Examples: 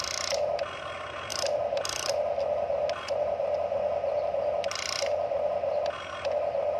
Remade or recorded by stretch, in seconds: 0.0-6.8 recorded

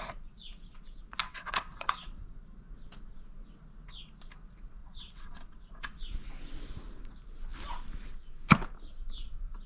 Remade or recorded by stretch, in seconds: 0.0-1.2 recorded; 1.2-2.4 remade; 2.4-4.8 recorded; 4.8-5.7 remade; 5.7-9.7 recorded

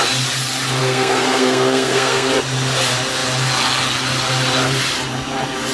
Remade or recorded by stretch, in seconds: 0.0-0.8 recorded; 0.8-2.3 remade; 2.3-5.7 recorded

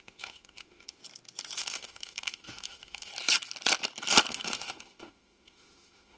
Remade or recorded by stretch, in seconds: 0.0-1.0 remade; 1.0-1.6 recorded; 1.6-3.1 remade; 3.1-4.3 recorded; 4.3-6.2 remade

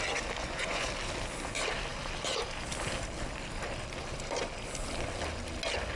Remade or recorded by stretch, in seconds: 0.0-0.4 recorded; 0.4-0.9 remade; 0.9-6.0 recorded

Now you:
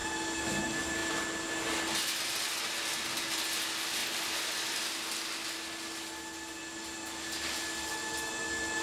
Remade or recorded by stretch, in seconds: 0.0-8.8 recorded

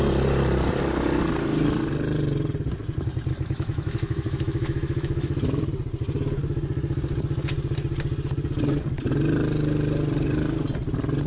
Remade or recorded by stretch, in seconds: 0.0-3.3 recorded; 3.3-5.6 remade; 5.6-11.3 recorded